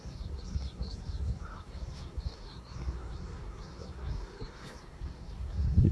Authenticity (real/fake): fake